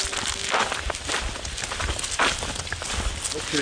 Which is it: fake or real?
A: real